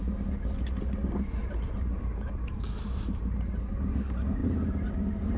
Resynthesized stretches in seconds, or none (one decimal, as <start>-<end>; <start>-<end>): 1.4-3.1; 4.4-4.9